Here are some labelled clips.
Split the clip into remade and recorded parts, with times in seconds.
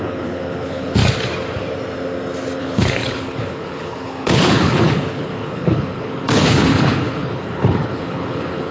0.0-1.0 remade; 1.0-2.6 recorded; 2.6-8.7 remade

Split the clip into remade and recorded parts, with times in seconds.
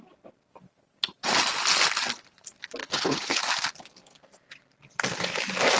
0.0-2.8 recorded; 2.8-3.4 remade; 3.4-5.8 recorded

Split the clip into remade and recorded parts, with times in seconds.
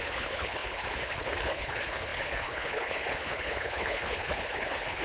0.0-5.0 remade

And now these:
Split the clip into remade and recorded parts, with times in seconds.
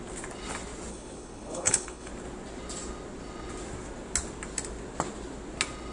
0.0-0.9 recorded; 0.9-2.1 remade; 2.1-5.9 recorded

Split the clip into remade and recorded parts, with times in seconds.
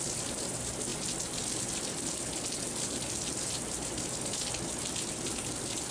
0.0-5.9 recorded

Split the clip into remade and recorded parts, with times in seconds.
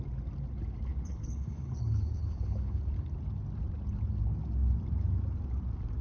0.0-0.9 recorded; 0.9-2.8 remade; 2.8-6.0 recorded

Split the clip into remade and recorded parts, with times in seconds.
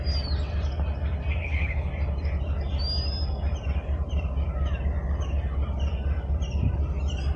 0.0-1.4 recorded; 1.4-1.9 remade; 1.9-7.4 recorded